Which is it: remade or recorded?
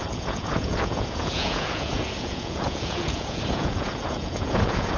remade